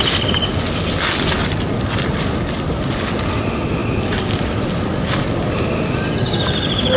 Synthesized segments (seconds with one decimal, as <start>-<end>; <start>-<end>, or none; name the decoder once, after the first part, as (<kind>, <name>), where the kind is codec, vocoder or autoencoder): none